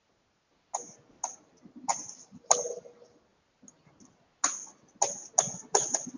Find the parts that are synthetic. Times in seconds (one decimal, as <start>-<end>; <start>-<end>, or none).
1.9-2.8